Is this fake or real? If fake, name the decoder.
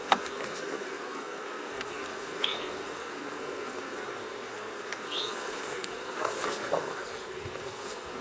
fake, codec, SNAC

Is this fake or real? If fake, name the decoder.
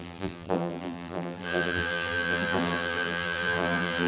fake, vocoder, BigVGAN v2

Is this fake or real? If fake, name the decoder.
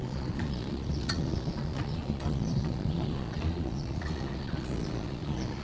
fake, vocoder, Vocos